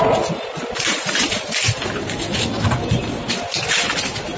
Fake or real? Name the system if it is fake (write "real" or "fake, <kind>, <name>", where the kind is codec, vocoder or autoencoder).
real